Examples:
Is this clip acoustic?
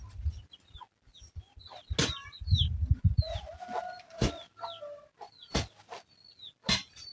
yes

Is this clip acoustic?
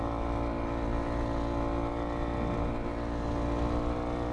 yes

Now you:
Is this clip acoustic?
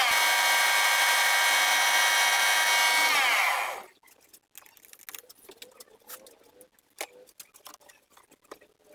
yes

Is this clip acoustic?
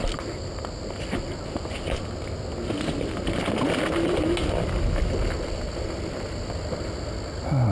yes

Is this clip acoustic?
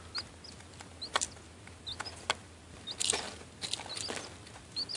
yes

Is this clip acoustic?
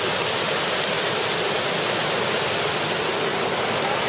yes